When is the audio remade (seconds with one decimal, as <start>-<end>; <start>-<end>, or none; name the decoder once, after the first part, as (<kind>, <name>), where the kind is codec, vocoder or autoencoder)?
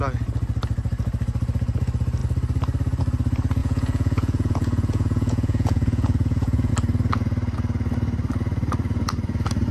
3.6-6.7 (vocoder, Vocos)